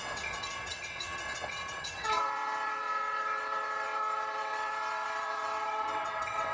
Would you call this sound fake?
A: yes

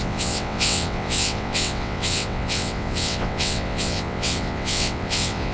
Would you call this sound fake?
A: yes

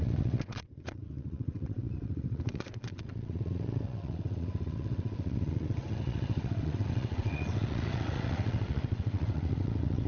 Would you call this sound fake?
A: yes